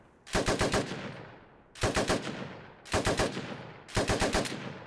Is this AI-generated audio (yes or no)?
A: no